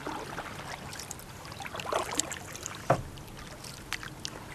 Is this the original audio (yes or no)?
yes